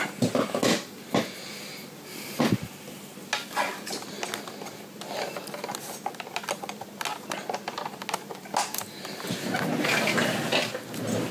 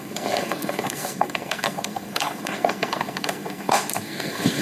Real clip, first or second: first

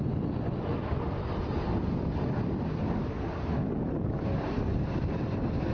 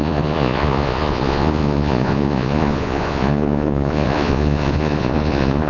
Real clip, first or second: first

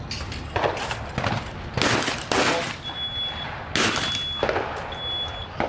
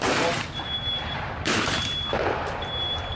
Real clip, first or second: first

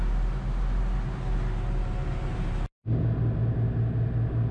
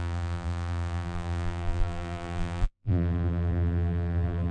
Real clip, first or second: first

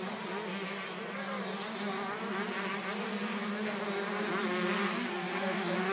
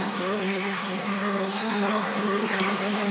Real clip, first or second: first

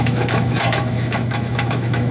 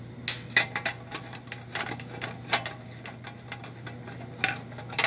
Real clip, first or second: second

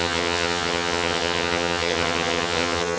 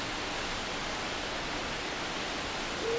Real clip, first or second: second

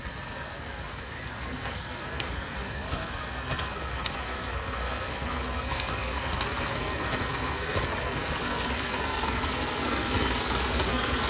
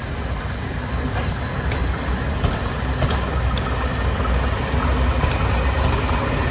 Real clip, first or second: second